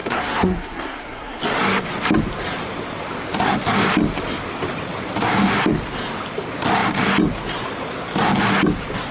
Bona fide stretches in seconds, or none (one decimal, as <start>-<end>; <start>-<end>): 1.4-9.1